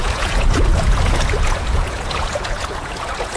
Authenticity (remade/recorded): remade